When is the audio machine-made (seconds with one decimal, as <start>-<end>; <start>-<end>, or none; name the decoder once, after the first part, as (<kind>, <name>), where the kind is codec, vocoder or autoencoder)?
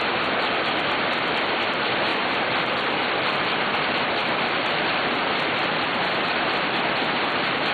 0.0-7.7 (vocoder, BigVGAN v2)